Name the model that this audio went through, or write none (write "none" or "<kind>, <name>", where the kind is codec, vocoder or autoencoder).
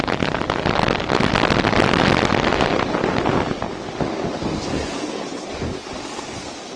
none